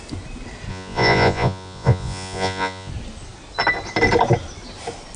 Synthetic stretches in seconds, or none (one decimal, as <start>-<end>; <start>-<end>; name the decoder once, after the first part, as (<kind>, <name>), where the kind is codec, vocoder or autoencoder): 0.7-2.9 (vocoder, Vocos)